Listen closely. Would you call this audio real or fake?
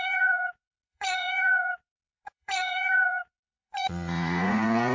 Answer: fake